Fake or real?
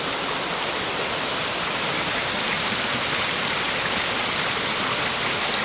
real